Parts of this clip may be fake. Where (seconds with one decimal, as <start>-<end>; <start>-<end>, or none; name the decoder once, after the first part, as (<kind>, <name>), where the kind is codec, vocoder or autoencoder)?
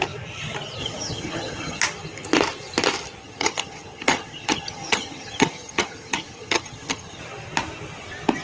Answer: 0.8-1.8 (vocoder, HiFi-GAN); 3.2-7.2